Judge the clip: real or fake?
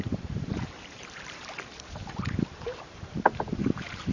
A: fake